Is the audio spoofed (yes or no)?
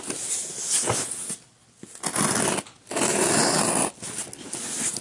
no